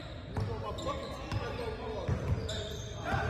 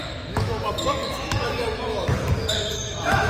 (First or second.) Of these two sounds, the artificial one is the second